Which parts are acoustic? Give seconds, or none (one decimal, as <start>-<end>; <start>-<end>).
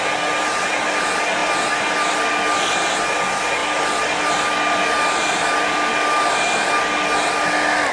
0.0-7.9